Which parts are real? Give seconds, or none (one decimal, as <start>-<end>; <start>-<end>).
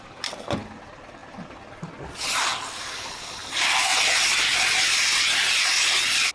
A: 1.2-2.8; 3.9-6.3